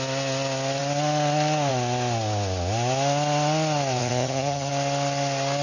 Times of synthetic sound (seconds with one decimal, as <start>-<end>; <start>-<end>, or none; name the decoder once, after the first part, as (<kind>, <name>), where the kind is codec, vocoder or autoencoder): 4.0-4.7 (vocoder, HiFi-GAN)